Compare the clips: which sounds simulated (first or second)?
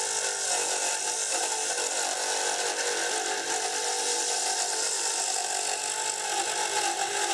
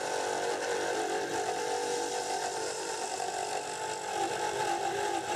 second